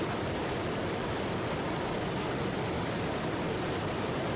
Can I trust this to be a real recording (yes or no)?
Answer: yes